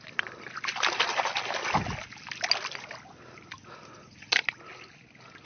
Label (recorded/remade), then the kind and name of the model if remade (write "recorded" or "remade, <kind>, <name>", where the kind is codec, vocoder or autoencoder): recorded